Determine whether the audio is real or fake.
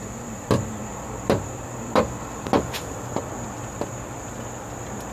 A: real